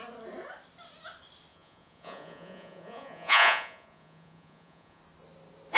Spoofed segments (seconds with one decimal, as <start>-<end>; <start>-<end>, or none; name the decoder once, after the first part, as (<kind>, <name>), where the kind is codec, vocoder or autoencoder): 1.5-5.0 (vocoder, Vocos)

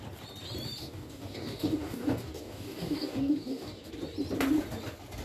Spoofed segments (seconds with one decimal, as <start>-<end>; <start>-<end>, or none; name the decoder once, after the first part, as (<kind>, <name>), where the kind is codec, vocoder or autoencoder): 0.8-3.9 (codec, DAC)

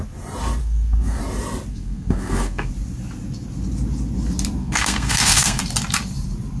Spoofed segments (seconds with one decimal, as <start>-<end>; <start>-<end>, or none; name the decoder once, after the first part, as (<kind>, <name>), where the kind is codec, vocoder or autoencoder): 0.6-1.2 (codec, SNAC); 1.7-2.7; 4.6-5.6

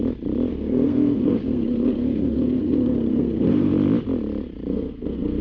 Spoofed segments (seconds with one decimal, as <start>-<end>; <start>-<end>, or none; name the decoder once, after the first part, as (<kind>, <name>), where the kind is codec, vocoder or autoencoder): 0.5-3.7 (codec, SNAC); 4.7-5.4

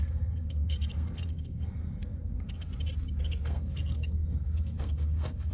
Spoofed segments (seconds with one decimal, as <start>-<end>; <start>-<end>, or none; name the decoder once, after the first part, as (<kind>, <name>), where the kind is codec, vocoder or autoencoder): 0.0-2.7 (codec, SNAC); 3.2-5.5

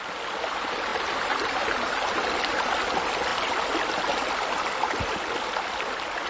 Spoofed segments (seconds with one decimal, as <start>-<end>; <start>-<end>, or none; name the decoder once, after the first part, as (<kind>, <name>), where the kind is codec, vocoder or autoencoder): none

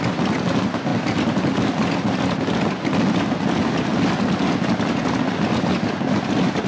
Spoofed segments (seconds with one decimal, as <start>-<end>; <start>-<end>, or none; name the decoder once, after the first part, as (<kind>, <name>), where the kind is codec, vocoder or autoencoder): none